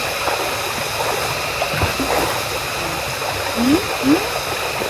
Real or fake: real